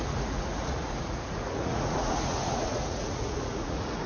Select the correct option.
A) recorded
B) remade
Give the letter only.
B